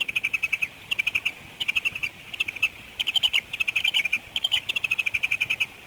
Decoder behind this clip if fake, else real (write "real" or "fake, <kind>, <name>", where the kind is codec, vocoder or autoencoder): real